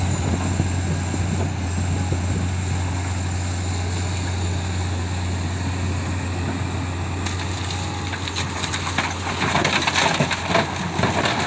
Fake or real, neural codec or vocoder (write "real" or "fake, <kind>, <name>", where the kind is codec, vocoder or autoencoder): real